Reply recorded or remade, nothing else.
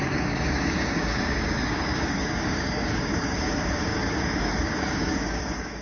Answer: remade